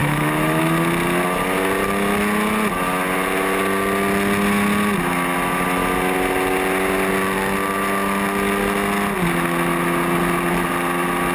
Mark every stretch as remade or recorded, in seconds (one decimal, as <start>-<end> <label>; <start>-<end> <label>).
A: 0.0-0.6 remade; 0.6-11.3 recorded